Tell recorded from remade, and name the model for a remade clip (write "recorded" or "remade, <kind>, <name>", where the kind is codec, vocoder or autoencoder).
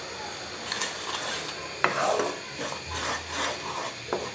recorded